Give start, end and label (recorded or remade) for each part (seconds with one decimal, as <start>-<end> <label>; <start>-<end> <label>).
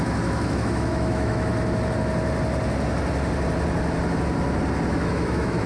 0.0-1.5 remade; 1.5-4.9 recorded; 4.9-5.7 remade